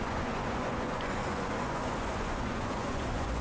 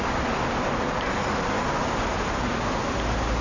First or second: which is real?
second